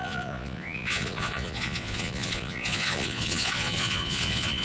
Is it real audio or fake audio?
fake